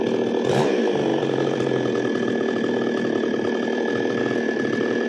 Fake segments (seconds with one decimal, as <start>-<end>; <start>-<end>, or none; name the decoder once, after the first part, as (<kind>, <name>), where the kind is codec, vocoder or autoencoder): 1.1-4.2 (vocoder, BigVGAN v2)